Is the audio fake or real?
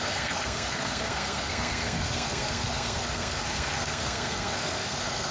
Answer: fake